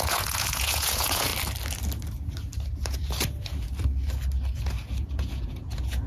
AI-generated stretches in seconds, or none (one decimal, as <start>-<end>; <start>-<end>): 0.0-1.3; 5.0-6.1